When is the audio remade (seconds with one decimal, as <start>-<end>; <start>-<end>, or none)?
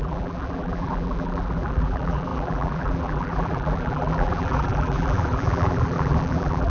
0.0-6.7